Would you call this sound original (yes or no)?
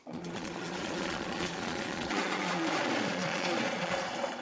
no